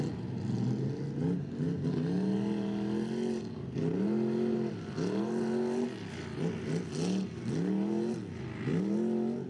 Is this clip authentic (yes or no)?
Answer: yes